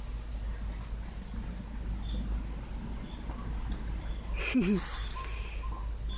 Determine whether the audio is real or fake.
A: real